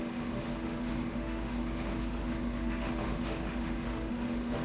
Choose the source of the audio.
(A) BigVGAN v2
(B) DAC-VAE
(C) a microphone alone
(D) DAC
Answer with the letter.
B